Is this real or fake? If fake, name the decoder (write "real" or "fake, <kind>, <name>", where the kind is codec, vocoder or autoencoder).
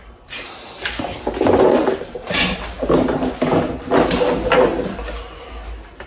real